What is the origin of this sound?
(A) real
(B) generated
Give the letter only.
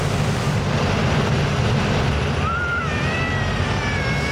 A